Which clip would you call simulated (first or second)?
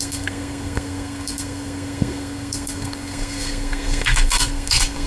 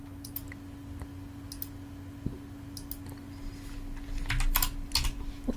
first